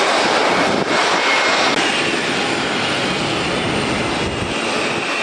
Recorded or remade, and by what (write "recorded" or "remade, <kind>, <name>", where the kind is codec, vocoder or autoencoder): recorded